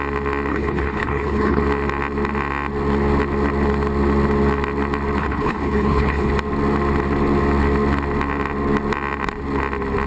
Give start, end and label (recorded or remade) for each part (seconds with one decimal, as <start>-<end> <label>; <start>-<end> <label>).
0.0-0.5 recorded; 0.5-1.6 remade; 1.6-5.2 recorded; 5.2-6.3 remade; 6.3-10.1 recorded